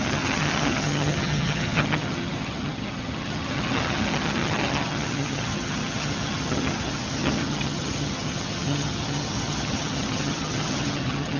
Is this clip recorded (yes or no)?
no